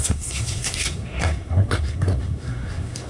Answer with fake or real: fake